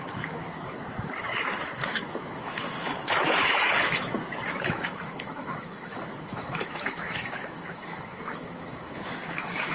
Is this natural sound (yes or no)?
no